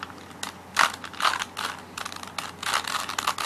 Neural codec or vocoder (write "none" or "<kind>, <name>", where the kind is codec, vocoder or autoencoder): none